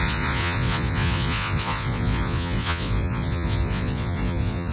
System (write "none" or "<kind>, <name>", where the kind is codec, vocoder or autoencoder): vocoder, Vocos